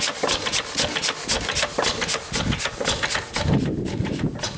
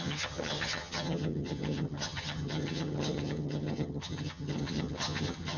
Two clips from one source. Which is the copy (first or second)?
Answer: second